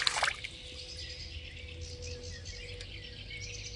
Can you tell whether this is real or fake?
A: real